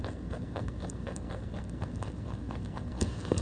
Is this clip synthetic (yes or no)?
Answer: yes